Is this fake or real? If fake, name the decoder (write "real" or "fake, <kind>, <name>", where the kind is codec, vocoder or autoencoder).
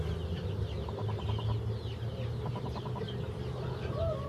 real